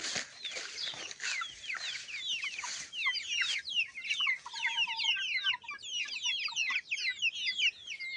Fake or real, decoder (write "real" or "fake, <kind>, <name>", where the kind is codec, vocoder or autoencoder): real